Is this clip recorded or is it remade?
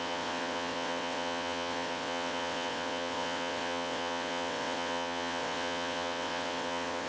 remade